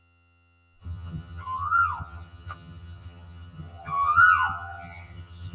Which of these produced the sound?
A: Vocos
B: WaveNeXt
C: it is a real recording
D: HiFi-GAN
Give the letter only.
D